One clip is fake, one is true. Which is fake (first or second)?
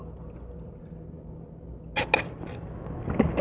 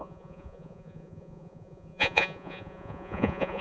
second